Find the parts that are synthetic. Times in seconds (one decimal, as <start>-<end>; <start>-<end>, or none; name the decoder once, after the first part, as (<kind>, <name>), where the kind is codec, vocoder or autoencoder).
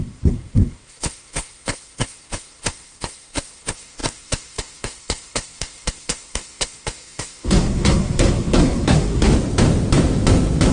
0.0-9.3 (codec, SNAC)